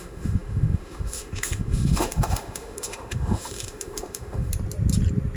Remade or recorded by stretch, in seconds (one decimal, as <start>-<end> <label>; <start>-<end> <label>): 0.0-4.5 remade; 4.5-5.4 recorded